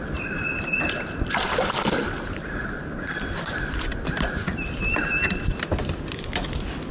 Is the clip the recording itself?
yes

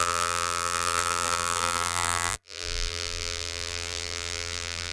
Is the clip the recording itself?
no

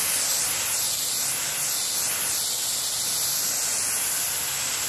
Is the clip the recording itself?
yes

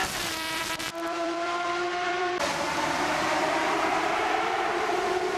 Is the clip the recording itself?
no